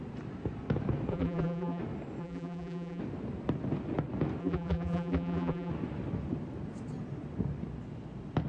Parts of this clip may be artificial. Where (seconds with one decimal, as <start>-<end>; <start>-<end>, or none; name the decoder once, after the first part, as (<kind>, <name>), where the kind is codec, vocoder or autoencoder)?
1.1-1.8 (vocoder, BigVGAN v2); 2.2-3.0; 4.4-5.7